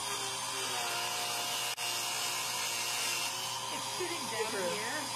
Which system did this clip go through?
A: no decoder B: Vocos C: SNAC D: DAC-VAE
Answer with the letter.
A